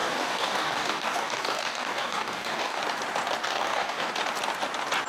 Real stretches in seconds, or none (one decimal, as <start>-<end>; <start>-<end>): 2.8-3.4; 4.1-5.1